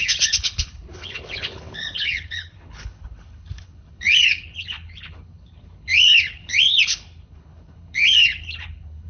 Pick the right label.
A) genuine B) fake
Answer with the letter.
B